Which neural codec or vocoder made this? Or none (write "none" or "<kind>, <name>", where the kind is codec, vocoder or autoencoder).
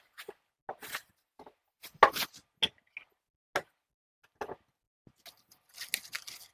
none